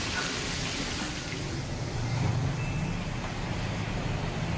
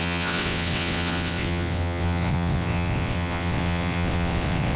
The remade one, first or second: second